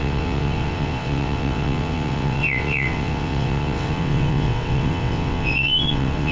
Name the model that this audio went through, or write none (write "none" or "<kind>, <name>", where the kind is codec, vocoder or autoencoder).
vocoder, WaveNeXt